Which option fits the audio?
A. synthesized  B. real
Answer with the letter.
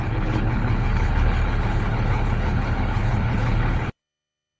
A